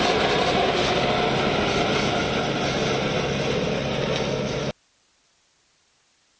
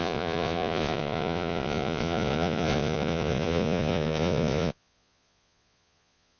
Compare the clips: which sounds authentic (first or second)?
first